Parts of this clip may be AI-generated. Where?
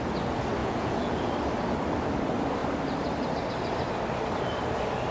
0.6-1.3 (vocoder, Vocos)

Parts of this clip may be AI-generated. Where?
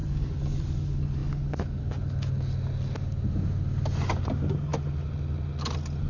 none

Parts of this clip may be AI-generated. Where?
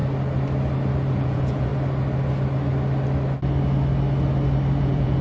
1.1-1.7 (vocoder, Vocos); 4.8-5.2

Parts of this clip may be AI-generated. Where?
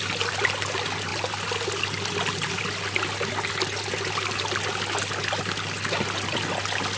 none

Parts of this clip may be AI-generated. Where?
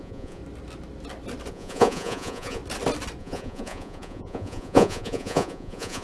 0.0-0.4 (vocoder, Vocos); 1.5-2.6; 3.2-6.0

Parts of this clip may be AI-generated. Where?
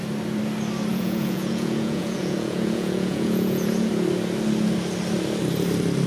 0.9-3.9 (vocoder, Vocos)